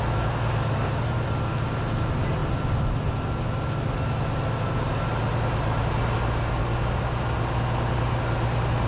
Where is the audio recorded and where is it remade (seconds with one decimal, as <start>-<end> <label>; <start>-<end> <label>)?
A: 0.0-6.6 recorded; 6.6-7.2 remade; 7.2-8.9 recorded